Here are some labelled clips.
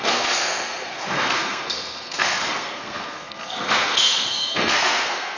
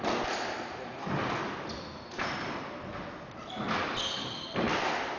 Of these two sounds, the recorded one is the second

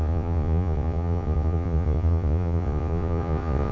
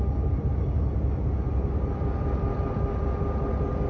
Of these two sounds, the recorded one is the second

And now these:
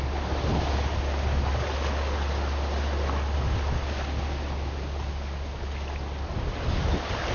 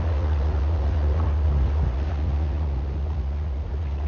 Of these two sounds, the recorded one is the first